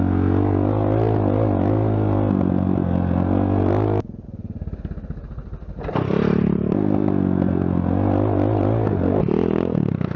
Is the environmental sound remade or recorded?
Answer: recorded